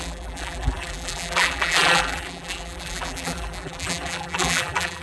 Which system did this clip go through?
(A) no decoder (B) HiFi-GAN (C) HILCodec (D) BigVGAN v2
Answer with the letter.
D